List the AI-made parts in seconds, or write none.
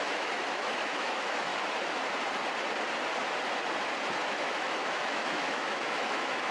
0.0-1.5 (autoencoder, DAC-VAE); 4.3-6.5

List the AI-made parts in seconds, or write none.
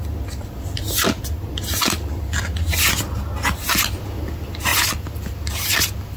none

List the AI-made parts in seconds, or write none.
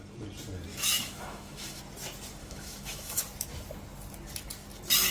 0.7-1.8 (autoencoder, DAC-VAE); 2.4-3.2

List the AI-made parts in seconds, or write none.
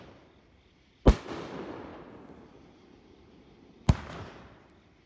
none